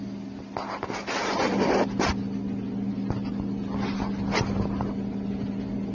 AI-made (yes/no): no